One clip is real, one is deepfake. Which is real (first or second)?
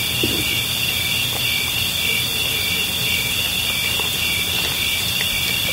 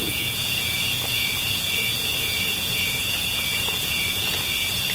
first